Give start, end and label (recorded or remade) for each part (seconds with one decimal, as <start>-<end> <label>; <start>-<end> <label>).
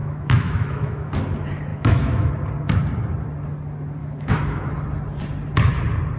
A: 0.0-1.1 remade; 1.1-1.7 recorded; 1.7-2.3 remade; 2.3-4.0 recorded; 4.0-4.7 remade; 4.7-6.2 recorded